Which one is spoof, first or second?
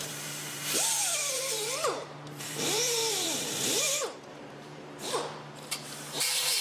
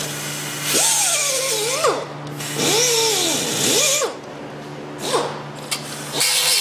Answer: first